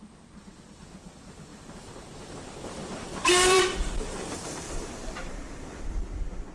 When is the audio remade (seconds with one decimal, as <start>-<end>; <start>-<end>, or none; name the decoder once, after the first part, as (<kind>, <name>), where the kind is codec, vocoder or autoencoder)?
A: 1.5-2.0 (vocoder, BigVGAN v2); 2.8-5.9